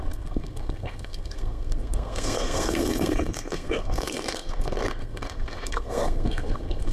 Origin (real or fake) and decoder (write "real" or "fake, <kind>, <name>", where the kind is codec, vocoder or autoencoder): fake, codec, SNAC